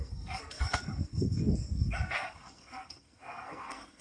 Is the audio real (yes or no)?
no